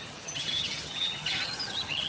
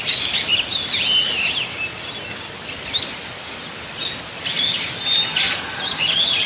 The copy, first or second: first